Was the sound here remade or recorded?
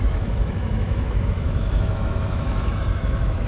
remade